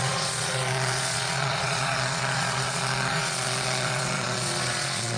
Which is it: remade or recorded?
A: remade